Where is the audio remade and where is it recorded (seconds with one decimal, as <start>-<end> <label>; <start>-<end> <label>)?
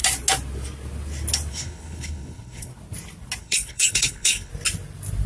0.0-1.5 recorded; 1.5-2.7 remade; 2.7-3.4 recorded; 3.4-4.5 remade; 4.5-5.3 recorded